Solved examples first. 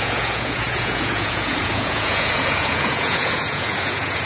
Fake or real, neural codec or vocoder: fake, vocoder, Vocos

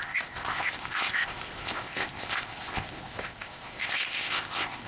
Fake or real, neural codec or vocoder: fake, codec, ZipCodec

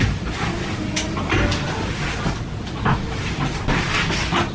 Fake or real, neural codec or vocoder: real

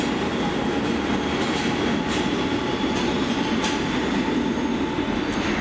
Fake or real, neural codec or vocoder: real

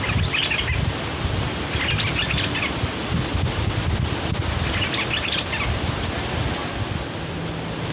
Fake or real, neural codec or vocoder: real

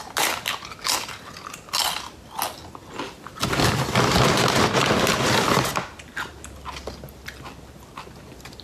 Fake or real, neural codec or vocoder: real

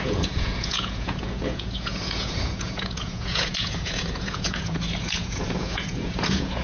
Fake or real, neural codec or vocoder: fake, vocoder, Vocos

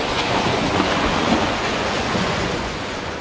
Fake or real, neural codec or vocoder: fake, vocoder, Vocos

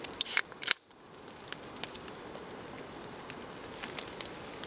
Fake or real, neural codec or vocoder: real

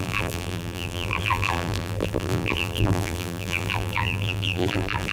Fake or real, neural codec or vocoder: fake, vocoder, BigVGAN v2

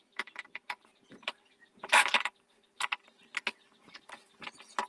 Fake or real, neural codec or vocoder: fake, vocoder, BigVGAN v2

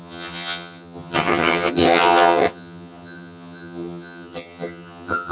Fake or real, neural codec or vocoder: fake, vocoder, HiFi-GAN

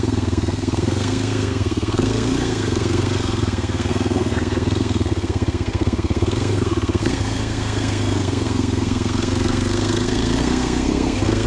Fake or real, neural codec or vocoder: fake, codec, SNAC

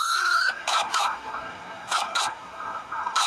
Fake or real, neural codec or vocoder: fake, codec, SNAC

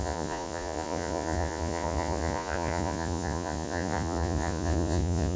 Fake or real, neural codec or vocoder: fake, vocoder, Vocos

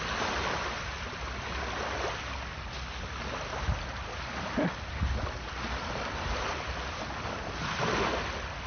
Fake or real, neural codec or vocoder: real